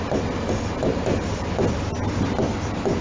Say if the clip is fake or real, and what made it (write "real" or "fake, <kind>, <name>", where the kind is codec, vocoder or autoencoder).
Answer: real